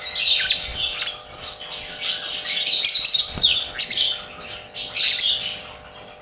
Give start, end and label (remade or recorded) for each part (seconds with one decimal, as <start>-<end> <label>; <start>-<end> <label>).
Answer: 0.0-6.2 recorded